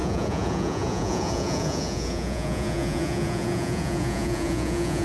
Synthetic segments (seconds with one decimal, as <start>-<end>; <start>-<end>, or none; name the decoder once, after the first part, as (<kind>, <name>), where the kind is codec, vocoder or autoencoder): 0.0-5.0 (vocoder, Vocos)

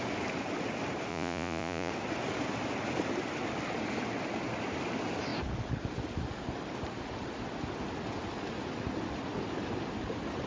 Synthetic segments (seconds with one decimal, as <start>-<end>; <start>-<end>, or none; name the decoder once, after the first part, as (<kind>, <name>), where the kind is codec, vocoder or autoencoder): 1.1-1.9 (vocoder, Vocos)

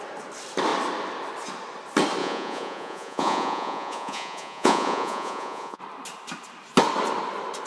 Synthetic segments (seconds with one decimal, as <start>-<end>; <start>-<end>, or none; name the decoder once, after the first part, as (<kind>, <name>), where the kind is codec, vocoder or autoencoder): 2.2-5.8 (vocoder, Vocos)